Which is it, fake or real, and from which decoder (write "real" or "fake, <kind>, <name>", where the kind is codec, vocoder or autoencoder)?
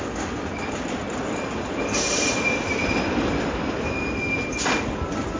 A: real